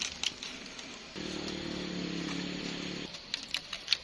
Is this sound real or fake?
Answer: real